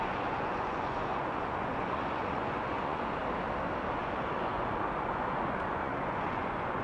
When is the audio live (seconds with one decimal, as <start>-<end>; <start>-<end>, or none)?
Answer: 3.2-4.0